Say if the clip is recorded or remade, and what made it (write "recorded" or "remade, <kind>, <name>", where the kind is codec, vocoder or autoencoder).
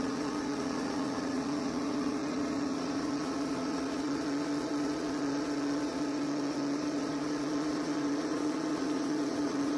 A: remade, vocoder, Vocos